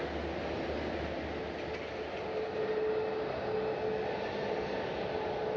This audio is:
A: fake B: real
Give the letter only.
B